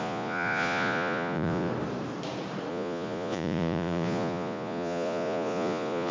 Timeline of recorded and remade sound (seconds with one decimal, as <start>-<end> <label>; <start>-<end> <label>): 0.0-1.7 remade; 1.7-2.7 recorded; 2.7-6.1 remade